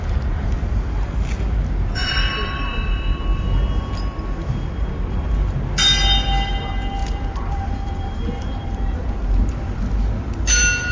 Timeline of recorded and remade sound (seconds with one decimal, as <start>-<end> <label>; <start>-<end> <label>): 0.0-2.0 recorded; 2.0-5.3 remade; 5.3-7.0 recorded; 7.0-9.8 remade; 9.8-10.9 recorded